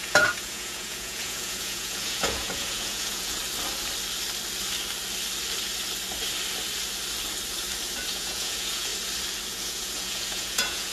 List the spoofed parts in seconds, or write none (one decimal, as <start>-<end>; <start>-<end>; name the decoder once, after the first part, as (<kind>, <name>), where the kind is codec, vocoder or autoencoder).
0.0-3.4 (vocoder, Vocos); 8.1-8.9; 9.5-10.9